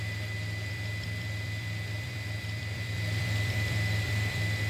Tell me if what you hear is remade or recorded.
remade